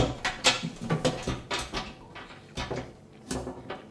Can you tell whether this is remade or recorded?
recorded